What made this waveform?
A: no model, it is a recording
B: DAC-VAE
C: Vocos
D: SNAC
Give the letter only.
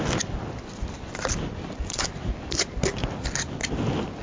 A